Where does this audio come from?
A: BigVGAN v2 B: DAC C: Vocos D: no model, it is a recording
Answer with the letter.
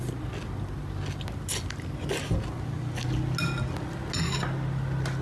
D